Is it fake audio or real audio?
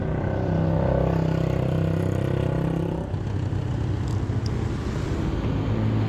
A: real